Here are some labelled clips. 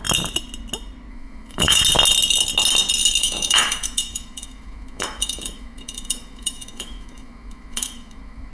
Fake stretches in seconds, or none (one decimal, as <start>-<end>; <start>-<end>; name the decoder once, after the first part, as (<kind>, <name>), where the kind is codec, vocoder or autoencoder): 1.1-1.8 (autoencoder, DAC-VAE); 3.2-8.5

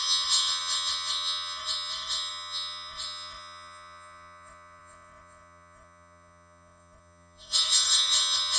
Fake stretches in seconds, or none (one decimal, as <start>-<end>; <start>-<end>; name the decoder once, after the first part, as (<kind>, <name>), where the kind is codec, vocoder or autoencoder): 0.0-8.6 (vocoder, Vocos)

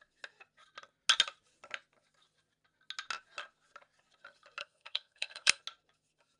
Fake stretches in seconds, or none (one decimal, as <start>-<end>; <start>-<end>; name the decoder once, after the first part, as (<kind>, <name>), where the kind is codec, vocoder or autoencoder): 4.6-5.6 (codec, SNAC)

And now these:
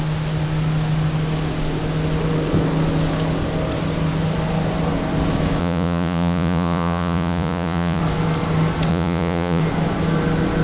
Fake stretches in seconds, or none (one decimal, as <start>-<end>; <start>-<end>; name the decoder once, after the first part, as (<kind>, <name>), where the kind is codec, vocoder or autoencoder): 5.6-8.0 (vocoder, Vocos); 8.9-9.6

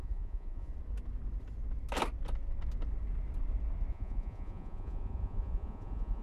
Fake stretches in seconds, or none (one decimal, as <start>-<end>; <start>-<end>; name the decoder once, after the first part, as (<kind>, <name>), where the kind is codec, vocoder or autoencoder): 0.0-0.7 (vocoder, Vocos); 3.9-6.2

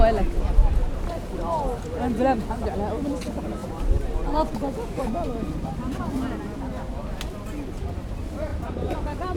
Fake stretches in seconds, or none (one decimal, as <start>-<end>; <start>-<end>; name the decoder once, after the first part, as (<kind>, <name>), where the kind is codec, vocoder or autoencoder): 8.5-9.4 (vocoder, BigVGAN v2)